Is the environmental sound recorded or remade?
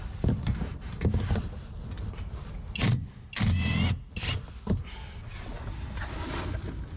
recorded